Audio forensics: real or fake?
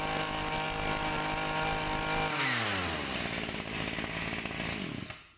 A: real